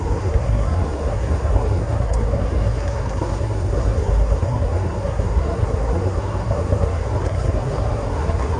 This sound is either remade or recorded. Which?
remade